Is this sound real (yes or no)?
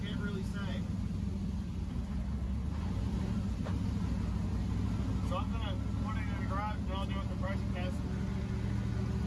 yes